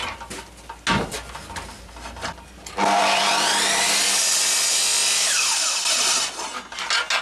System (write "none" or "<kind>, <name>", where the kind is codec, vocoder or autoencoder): none